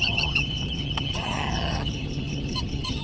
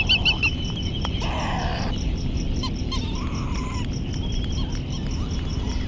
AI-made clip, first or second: first